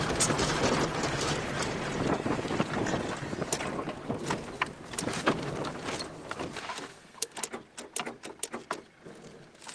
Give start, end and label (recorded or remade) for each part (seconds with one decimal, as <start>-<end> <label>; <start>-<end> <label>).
0.0-6.9 recorded; 6.9-7.4 remade; 7.4-9.7 recorded